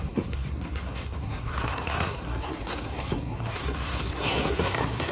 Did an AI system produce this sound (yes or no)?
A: yes